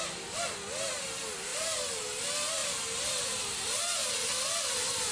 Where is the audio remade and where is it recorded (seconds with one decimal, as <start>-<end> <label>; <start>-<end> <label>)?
0.0-5.1 recorded